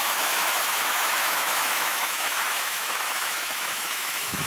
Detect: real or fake fake